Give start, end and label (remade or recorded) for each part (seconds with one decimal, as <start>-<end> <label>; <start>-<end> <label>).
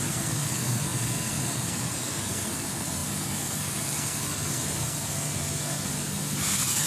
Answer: 0.0-6.9 remade